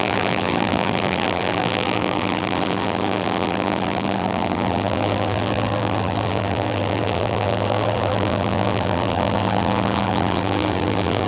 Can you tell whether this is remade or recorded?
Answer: remade